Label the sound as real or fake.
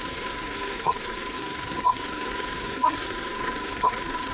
fake